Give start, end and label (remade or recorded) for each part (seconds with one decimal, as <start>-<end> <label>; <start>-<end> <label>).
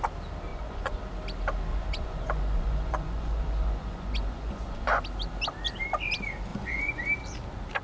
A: 0.0-0.5 recorded; 0.5-1.0 remade; 1.0-1.7 recorded; 1.7-5.0 remade; 5.0-6.5 recorded; 6.5-7.0 remade; 7.0-7.8 recorded